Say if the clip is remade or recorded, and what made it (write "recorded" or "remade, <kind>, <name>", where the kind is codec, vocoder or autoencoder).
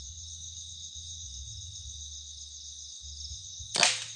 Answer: recorded